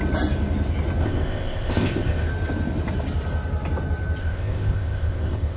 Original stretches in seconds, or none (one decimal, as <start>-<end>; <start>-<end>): 0.0-1.0; 2.3-4.2